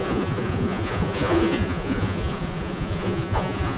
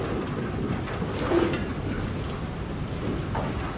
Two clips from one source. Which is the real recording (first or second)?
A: second